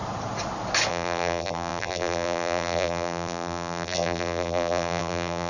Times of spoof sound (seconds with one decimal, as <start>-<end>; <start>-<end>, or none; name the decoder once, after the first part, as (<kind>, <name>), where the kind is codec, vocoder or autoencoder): 0.9-5.5 (vocoder, BigVGAN v2)